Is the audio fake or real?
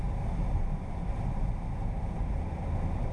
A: real